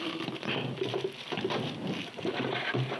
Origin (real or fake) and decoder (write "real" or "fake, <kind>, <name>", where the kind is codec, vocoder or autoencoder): real